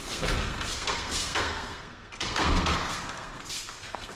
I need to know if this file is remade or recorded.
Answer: remade